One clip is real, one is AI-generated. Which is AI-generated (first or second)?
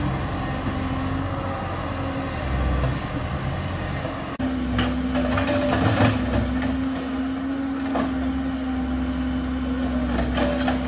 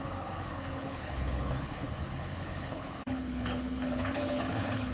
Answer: second